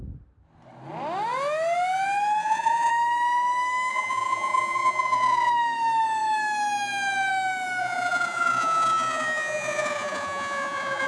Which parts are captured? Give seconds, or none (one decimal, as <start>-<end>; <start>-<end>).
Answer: 0.0-2.4; 2.9-3.9; 5.5-7.8